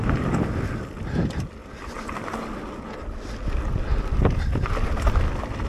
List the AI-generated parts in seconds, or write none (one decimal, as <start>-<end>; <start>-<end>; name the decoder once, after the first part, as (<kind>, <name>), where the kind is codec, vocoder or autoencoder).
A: none